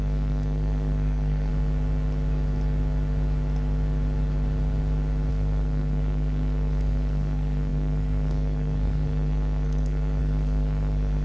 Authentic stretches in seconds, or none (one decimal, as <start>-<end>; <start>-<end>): 1.5-5.3